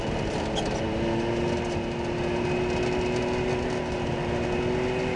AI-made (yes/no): no